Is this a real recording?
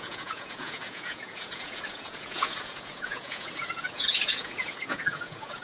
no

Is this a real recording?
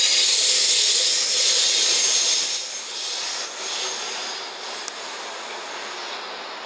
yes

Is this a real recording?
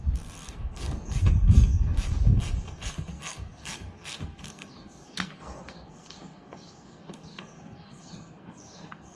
no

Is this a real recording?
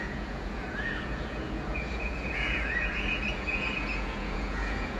no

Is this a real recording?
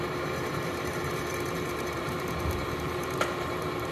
no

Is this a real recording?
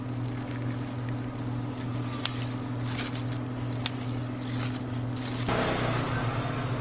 yes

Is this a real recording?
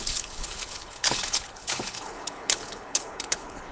no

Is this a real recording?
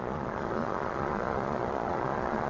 no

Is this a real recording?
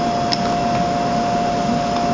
yes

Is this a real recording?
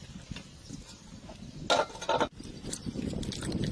yes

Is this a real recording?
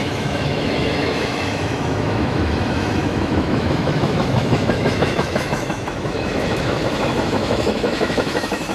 no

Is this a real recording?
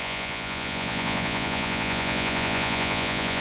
no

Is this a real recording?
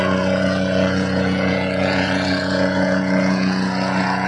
no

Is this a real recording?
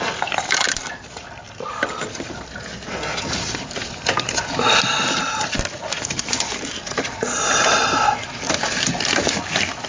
yes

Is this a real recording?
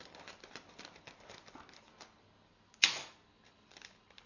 yes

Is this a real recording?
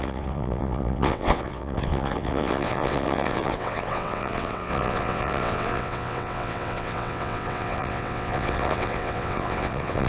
no